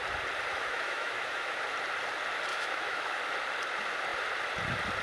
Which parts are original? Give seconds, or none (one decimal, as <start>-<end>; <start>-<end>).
0.0-0.5; 1.6-2.5; 3.2-5.0